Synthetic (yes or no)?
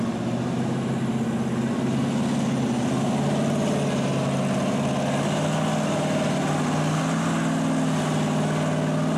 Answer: no